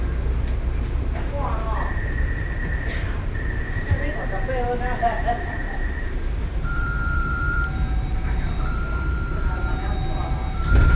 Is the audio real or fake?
fake